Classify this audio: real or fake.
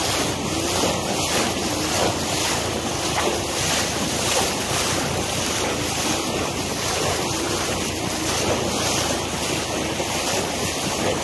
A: real